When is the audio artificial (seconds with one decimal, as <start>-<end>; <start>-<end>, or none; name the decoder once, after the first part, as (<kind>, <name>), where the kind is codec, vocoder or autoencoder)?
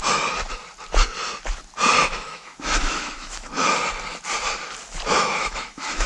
2.0-3.5 (autoencoder, DAC-VAE); 5.2-6.1